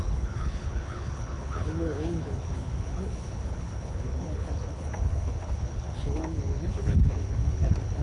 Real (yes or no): no